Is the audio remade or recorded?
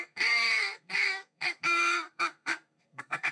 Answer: remade